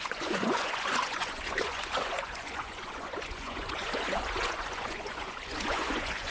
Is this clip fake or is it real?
fake